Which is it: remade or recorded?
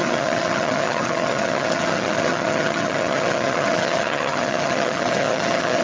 remade